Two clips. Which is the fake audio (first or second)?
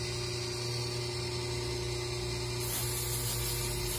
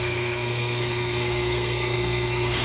second